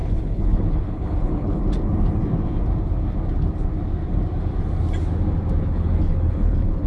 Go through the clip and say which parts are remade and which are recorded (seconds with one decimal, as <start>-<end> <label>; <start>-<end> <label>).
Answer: 0.0-1.6 remade; 1.6-5.6 recorded; 5.6-6.9 remade